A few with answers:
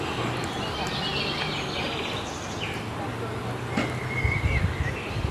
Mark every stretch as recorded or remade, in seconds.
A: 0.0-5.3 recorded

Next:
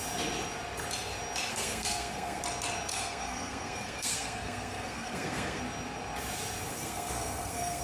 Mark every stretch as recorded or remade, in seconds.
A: 0.0-1.5 recorded; 1.5-2.4 remade; 2.4-2.9 recorded; 2.9-5.6 remade; 5.6-6.7 recorded; 6.7-7.8 remade

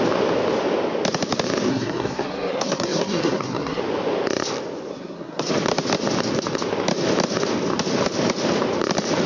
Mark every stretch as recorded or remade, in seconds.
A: 0.0-1.7 recorded; 1.7-3.8 remade; 3.8-4.9 recorded; 4.9-5.5 remade; 5.5-9.3 recorded

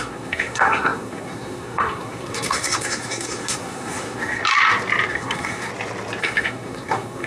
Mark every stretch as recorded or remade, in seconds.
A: 0.0-4.4 remade; 4.4-5.1 recorded; 5.1-5.7 remade; 5.7-6.2 recorded; 6.2-7.3 remade

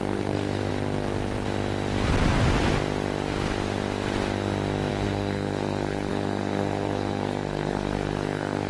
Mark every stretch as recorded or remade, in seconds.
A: 0.0-0.7 remade; 0.7-4.9 recorded; 4.9-8.7 remade